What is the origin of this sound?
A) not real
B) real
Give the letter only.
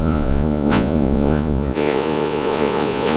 A